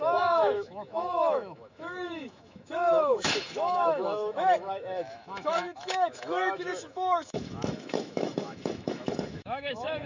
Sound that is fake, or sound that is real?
fake